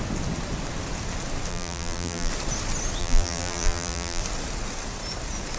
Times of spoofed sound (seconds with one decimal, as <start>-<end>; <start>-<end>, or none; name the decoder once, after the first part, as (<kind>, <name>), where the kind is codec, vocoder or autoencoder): 1.5-2.3 (vocoder, BigVGAN v2); 3.0-4.2